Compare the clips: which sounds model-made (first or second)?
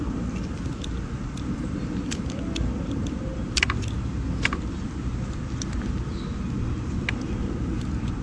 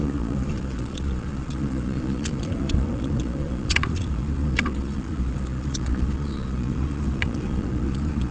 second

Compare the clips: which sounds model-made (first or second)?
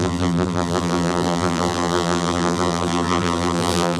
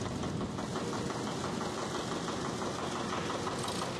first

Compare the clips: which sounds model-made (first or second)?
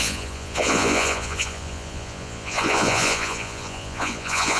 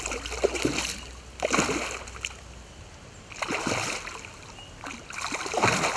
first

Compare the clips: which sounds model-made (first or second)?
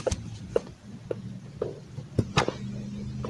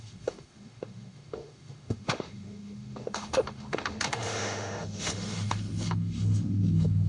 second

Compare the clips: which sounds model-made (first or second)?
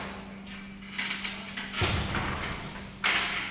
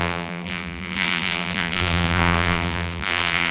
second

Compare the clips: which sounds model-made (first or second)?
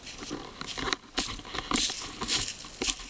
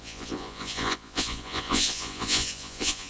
second